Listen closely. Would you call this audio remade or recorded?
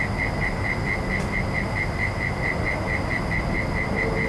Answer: recorded